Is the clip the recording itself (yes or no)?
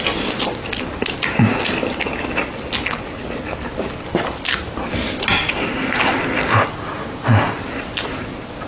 yes